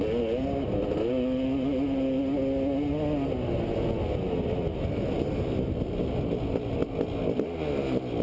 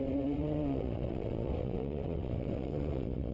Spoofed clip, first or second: second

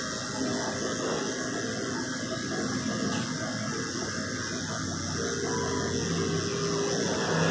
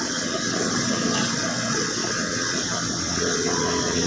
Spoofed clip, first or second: second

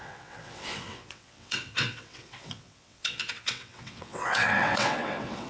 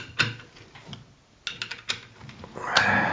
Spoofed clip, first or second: first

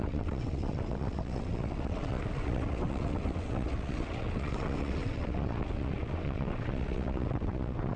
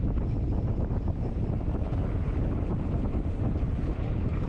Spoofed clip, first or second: first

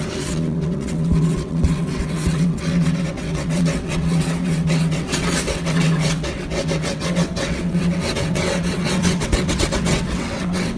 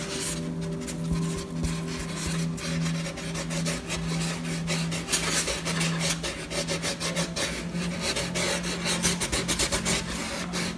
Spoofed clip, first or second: first